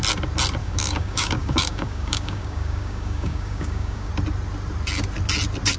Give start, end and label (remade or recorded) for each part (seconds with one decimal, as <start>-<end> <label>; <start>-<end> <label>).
0.0-0.6 recorded; 0.6-4.1 remade; 4.1-5.8 recorded